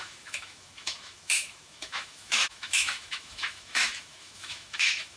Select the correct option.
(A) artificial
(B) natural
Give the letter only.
A